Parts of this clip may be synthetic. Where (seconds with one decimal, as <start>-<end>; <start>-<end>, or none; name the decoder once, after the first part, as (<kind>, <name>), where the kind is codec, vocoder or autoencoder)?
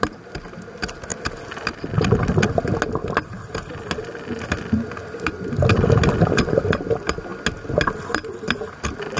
0.0-1.1 (vocoder, BigVGAN v2); 5.2-7.3; 8.0-9.2